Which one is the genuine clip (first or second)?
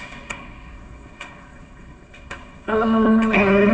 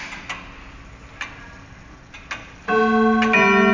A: second